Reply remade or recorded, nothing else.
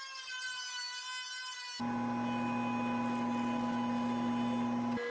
recorded